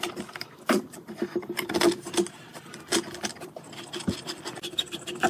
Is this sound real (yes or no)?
no